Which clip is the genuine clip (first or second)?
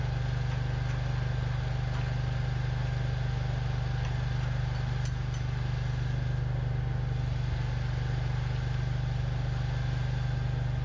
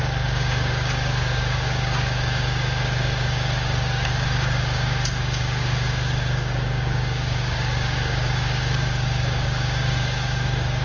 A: first